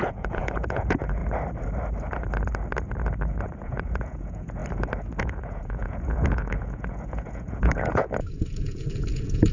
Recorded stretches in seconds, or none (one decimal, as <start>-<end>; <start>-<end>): 1.2-3.6; 4.6-5.2